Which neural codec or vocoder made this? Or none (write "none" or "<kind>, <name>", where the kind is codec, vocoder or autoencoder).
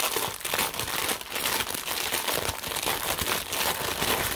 none